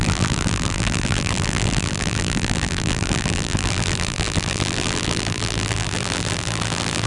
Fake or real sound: fake